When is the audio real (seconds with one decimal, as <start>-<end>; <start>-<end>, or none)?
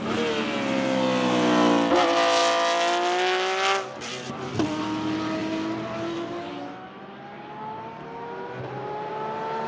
0.0-9.7